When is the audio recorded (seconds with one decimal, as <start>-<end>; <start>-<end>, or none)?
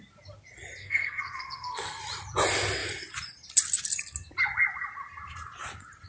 0.0-0.8; 2.0-6.1